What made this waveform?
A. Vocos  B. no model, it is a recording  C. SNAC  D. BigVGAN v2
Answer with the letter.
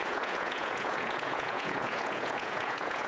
A